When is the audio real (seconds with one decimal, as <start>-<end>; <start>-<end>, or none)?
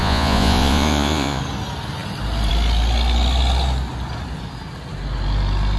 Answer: 1.4-5.8